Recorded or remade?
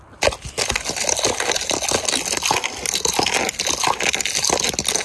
recorded